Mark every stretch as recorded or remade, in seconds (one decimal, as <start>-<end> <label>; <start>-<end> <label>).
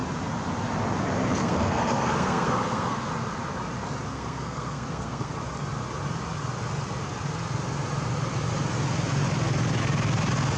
0.0-1.4 recorded; 1.4-3.1 remade; 3.1-4.1 recorded; 4.1-5.3 remade; 5.3-10.6 recorded